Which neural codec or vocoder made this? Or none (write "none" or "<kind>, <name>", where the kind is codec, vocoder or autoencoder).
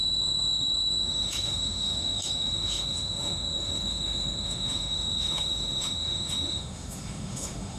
autoencoder, DAC-VAE